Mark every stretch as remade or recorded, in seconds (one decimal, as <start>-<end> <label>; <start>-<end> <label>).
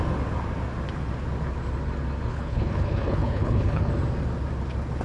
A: 0.0-2.3 recorded; 2.3-3.9 remade; 3.9-5.0 recorded